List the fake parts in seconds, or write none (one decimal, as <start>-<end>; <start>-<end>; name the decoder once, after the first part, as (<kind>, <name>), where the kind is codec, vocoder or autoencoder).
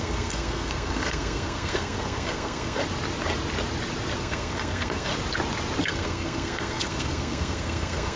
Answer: 0.0-2.8 (codec, SNAC); 4.2-5.1; 5.8-8.2